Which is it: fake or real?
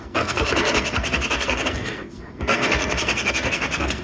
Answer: fake